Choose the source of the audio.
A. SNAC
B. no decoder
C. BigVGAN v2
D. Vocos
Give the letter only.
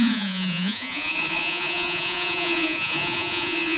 D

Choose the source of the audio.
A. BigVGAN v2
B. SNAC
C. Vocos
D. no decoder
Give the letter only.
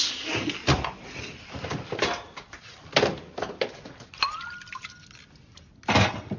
D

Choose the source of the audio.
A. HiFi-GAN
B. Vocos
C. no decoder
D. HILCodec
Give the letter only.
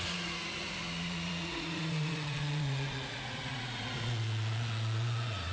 B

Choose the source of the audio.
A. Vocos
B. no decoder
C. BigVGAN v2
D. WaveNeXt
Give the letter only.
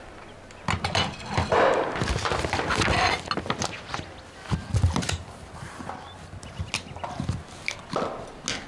B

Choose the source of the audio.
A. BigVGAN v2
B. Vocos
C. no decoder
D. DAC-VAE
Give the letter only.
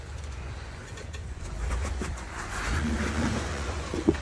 B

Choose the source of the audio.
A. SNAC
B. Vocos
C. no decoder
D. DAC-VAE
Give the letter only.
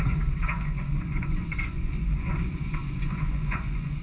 B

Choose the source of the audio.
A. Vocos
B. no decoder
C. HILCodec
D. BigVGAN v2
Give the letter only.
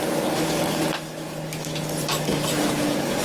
B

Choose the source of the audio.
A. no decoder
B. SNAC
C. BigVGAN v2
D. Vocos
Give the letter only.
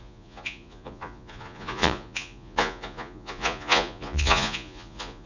D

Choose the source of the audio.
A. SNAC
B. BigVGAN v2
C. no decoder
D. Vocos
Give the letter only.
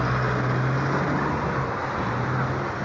C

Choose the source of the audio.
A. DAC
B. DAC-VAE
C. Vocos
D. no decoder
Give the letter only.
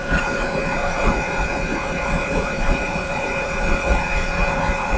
C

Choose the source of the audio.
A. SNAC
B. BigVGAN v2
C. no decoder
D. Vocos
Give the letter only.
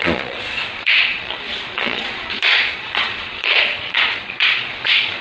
D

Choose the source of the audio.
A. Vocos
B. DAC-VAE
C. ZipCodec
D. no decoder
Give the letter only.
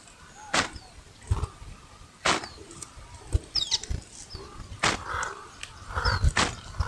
D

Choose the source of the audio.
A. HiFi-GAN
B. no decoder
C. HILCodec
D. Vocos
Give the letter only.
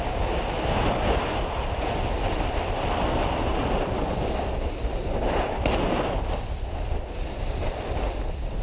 B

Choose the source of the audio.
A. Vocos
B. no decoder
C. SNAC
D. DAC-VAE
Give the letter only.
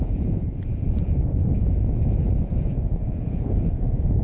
A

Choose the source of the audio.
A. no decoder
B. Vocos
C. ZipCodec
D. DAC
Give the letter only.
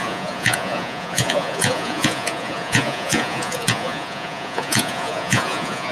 B